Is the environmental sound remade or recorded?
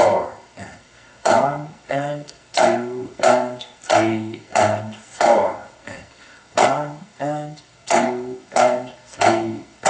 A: remade